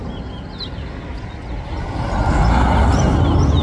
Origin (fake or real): real